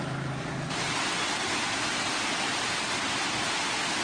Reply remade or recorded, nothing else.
recorded